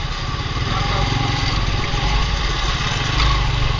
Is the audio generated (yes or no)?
no